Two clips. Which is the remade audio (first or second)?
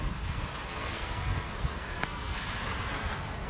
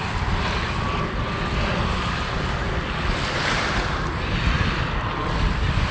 first